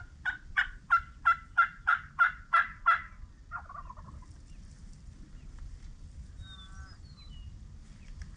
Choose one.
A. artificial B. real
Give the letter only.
B